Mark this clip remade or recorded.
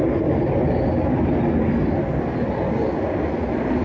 recorded